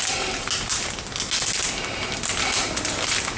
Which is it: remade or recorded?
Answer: recorded